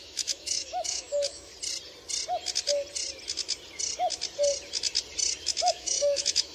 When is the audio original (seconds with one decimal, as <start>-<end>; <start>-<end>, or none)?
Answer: 1.5-5.4